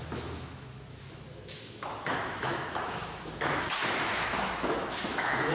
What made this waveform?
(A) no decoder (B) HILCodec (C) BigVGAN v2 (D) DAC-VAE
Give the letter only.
D